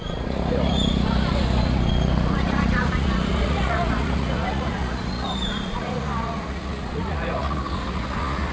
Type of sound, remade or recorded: remade